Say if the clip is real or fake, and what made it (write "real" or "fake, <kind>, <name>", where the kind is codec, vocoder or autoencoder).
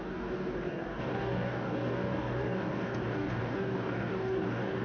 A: fake, codec, DAC